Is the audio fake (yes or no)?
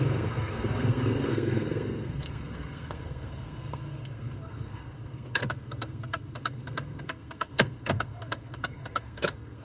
yes